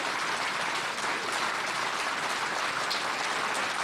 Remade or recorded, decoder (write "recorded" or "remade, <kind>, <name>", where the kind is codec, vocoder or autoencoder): recorded